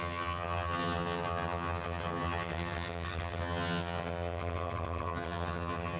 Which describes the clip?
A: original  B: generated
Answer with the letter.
B